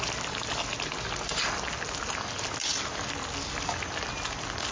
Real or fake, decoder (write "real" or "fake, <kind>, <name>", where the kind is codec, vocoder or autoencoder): real